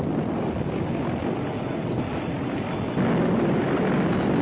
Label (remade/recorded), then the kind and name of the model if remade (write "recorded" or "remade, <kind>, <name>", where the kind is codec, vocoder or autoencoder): recorded